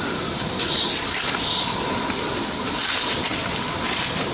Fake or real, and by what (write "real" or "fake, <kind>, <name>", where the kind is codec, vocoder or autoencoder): real